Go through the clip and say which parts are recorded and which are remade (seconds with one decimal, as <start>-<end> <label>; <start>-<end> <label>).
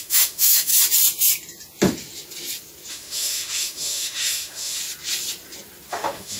0.0-0.7 remade; 0.7-2.9 recorded; 2.9-4.8 remade; 4.8-5.9 recorded; 5.9-6.4 remade